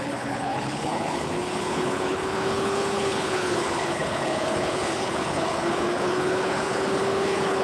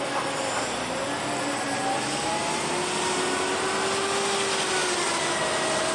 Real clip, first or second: second